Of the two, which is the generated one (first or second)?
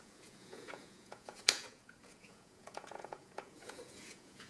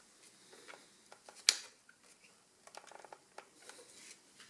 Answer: first